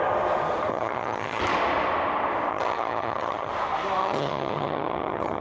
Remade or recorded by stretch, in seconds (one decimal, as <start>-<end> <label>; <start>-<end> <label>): 0.0-0.7 recorded; 0.7-1.4 remade; 1.4-2.5 recorded; 2.5-3.5 remade; 3.5-4.0 recorded; 4.0-5.4 remade